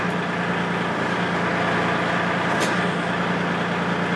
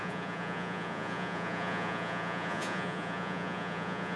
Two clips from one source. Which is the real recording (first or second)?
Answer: first